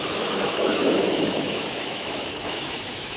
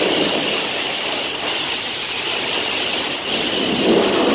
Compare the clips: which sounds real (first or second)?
second